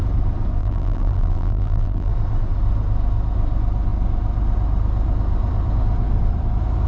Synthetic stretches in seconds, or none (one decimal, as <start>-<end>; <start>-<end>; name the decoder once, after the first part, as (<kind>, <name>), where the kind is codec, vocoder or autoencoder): 0.6-2.1 (vocoder, BigVGAN v2)